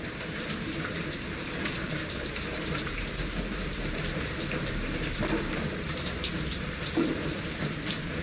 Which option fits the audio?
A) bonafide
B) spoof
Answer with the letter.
B